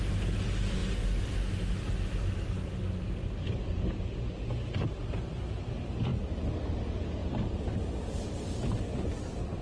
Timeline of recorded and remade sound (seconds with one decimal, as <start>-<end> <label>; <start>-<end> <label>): 0.0-9.6 recorded